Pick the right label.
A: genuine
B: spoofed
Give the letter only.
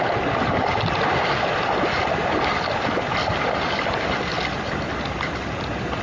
A